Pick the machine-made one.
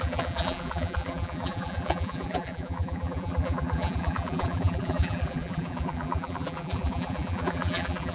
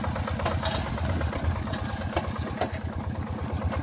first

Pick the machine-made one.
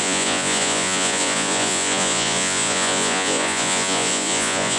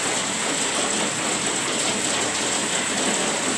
first